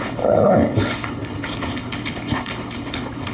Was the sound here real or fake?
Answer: fake